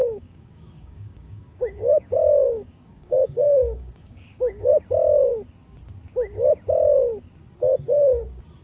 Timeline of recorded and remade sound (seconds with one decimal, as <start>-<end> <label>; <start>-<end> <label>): 0.0-4.7 remade; 4.7-8.6 recorded